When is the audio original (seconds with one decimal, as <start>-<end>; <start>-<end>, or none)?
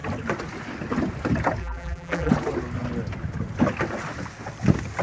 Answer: 0.0-1.6; 2.3-5.0